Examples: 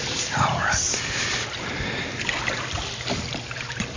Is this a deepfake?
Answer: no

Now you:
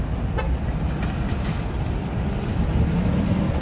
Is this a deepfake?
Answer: no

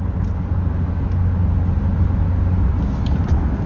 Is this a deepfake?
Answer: no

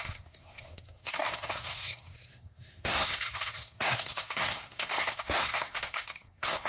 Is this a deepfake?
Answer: yes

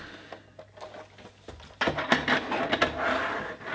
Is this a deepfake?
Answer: no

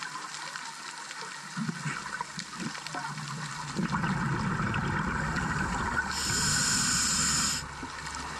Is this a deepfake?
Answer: no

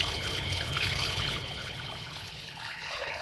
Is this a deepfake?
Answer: yes